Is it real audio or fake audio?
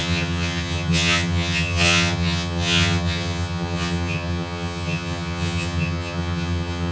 fake